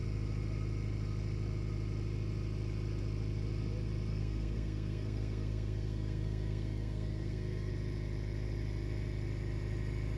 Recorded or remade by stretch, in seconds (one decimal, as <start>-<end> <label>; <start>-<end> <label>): 0.0-4.1 recorded; 4.1-7.7 remade; 7.7-10.2 recorded